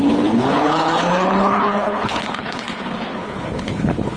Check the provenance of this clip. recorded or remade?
remade